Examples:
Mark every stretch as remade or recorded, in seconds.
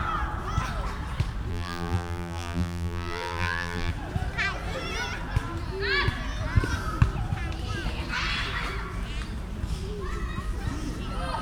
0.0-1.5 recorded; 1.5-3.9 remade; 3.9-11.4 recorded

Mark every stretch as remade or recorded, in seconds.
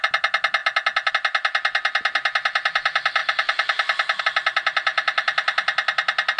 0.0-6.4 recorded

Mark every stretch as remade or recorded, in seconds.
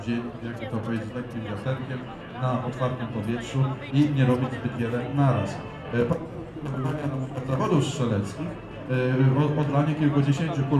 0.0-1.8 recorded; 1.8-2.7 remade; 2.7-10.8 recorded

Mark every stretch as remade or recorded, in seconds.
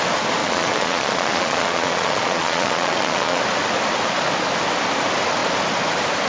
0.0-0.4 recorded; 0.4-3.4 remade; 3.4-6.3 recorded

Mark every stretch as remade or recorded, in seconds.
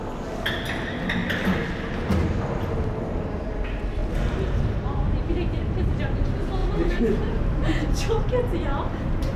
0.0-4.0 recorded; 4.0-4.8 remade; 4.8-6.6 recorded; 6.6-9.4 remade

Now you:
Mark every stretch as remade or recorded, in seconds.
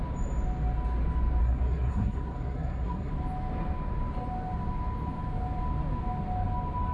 0.0-1.4 recorded; 1.4-3.1 remade; 3.1-6.9 recorded